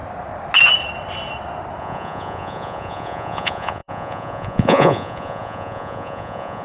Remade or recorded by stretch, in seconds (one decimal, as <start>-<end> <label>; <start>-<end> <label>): 0.0-1.8 recorded; 1.8-6.6 remade